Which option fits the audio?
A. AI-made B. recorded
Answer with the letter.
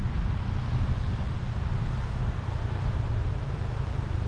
A